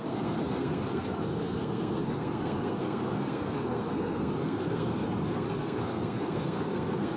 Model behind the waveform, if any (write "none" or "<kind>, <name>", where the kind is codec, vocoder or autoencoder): codec, SNAC